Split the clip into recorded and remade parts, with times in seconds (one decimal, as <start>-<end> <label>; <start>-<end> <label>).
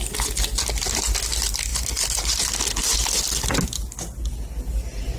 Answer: 0.0-1.7 recorded; 1.7-3.0 remade; 3.0-5.2 recorded